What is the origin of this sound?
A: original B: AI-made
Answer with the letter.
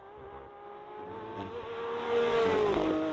A